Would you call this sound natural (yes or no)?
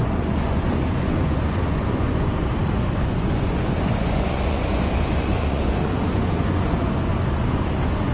no